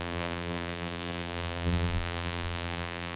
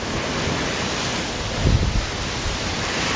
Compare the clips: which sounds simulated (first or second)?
first